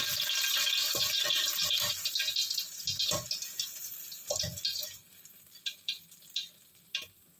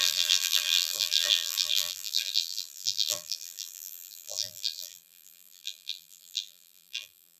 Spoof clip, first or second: second